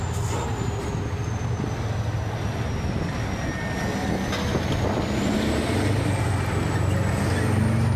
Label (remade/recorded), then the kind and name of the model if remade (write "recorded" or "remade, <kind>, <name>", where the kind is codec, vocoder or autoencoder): recorded